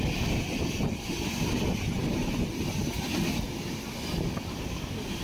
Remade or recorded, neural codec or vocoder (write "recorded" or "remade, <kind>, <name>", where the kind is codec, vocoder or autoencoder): recorded